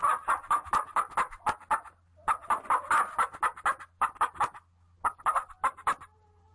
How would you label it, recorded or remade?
recorded